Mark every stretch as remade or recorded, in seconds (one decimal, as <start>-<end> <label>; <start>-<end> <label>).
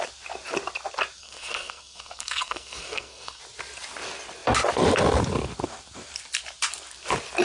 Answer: 0.0-1.2 recorded; 1.2-3.4 remade; 3.4-7.4 recorded